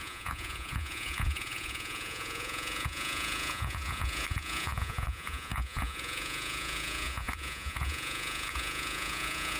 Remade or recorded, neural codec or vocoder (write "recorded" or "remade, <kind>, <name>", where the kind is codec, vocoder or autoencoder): remade, vocoder, Vocos